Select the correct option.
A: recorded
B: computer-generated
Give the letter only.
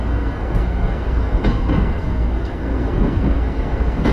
B